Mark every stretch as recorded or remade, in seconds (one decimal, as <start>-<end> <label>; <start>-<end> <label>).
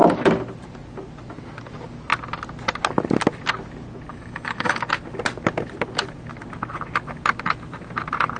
0.0-4.1 recorded; 4.1-4.8 remade; 4.8-8.4 recorded